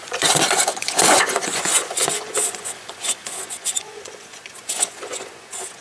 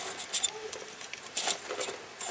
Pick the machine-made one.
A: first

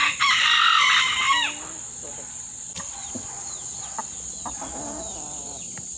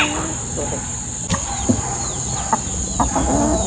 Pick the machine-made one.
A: first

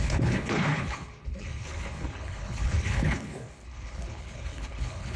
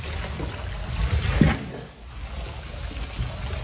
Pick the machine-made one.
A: first